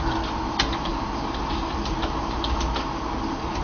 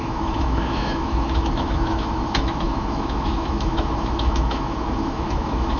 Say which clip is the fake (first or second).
second